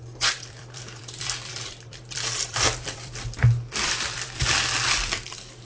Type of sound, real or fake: fake